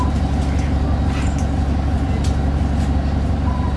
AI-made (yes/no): no